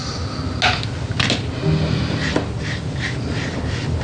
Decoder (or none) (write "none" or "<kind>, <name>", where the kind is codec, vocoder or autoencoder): none